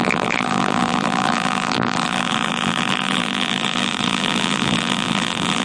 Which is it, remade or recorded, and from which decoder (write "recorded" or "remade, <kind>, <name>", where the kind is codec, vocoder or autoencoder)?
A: remade, vocoder, BigVGAN v2